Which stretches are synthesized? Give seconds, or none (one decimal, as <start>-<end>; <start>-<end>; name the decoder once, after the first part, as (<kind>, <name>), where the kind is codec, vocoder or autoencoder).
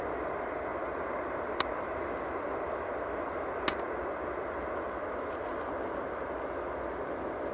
none